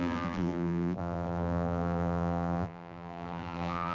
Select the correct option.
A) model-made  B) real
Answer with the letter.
A